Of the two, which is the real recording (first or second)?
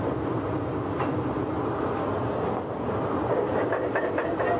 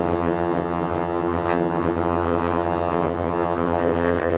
first